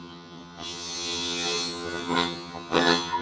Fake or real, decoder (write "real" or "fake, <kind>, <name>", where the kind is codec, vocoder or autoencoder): fake, vocoder, HiFi-GAN